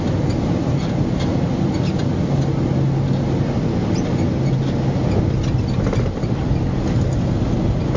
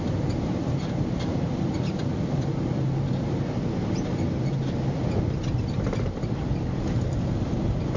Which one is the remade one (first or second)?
second